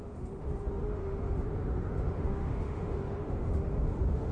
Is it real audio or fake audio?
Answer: fake